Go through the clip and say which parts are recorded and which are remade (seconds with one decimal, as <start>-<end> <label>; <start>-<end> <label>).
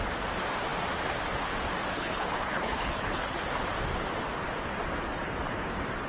0.0-1.9 recorded; 1.9-3.4 remade; 3.4-6.1 recorded